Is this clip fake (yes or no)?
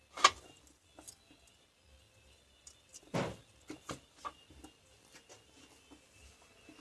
no